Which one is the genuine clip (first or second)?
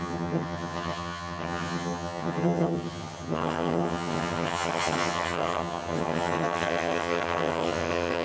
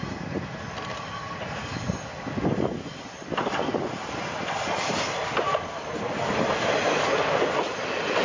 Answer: second